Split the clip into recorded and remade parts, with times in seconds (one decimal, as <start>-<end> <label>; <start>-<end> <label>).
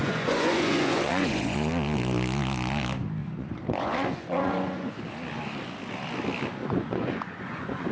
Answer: 0.0-1.7 remade; 1.7-3.2 recorded; 3.2-5.0 remade; 5.0-6.6 recorded; 6.6-7.9 remade